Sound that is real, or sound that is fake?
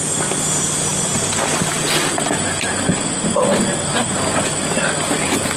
real